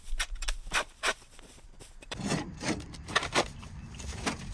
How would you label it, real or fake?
fake